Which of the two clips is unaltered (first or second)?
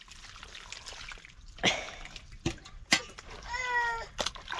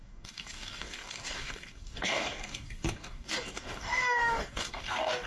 first